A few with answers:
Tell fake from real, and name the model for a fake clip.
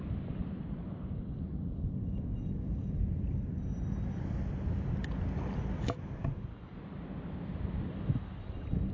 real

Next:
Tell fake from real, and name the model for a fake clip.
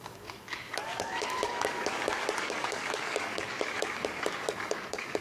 fake, codec, DAC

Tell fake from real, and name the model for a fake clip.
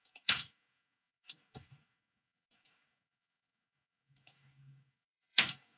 fake, codec, DAC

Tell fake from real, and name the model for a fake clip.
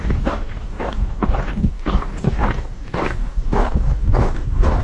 fake, codec, DAC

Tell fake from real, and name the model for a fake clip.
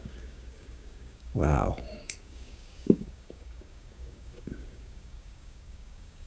fake, codec, DAC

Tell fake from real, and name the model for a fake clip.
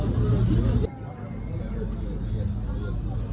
real